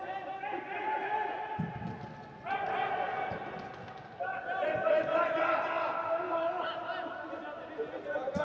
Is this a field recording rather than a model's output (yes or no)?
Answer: yes